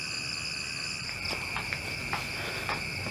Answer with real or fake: real